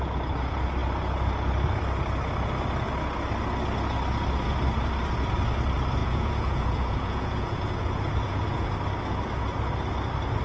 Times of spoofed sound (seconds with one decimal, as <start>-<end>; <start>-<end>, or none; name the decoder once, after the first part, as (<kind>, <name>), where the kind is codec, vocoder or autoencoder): 6.0-8.7 (vocoder, Vocos)